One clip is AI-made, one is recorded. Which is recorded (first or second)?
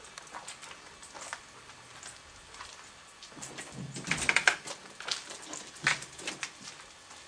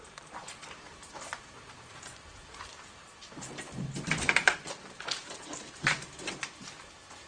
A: first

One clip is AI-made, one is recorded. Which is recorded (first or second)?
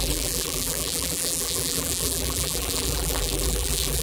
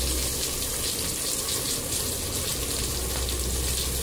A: second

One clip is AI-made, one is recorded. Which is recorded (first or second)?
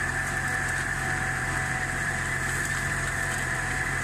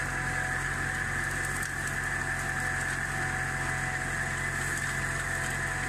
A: second